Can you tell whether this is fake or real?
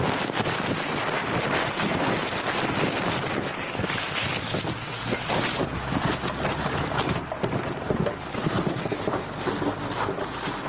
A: real